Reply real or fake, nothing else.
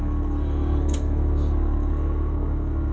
fake